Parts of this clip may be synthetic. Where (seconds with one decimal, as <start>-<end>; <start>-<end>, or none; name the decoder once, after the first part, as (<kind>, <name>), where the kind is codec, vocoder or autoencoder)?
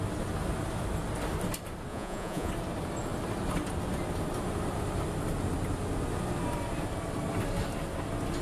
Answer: 1.9-2.5 (vocoder, Vocos)